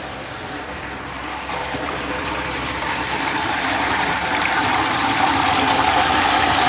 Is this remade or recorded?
remade